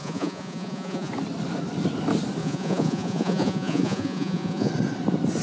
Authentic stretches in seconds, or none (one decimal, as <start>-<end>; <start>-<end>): 1.1-2.4; 4.7-5.4